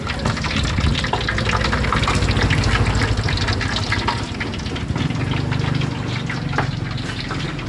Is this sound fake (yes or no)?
no